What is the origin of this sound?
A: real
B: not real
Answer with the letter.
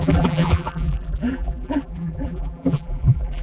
B